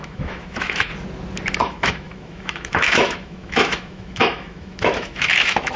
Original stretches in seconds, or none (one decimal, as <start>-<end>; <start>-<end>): 0.9-1.6